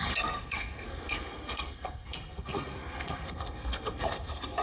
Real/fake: fake